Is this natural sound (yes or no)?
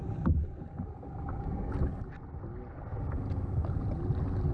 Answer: yes